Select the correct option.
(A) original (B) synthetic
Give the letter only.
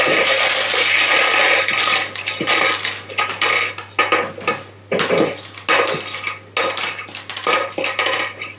A